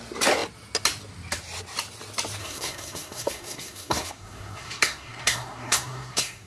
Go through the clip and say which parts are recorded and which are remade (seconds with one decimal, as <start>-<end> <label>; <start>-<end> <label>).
0.0-2.4 recorded; 2.4-6.5 remade

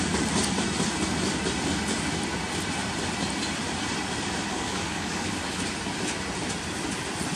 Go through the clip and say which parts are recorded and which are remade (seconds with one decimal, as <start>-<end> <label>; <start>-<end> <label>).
0.0-4.5 recorded; 4.5-5.8 remade; 5.8-7.4 recorded

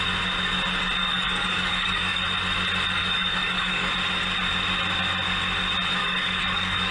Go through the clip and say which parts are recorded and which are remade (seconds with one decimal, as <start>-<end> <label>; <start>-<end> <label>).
0.0-1.0 recorded; 1.0-2.2 remade; 2.2-3.0 recorded; 3.0-3.9 remade; 3.9-6.0 recorded; 6.0-6.9 remade

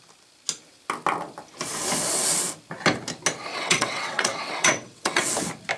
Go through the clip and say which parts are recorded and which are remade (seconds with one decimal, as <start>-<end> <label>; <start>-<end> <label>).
0.0-3.5 recorded; 3.5-5.3 remade; 5.3-5.8 recorded